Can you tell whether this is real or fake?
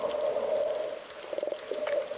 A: real